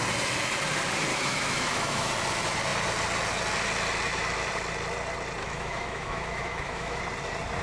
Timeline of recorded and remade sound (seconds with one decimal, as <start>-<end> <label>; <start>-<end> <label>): 0.0-1.1 recorded; 1.1-2.1 remade; 2.1-5.4 recorded; 5.4-7.0 remade; 7.0-7.6 recorded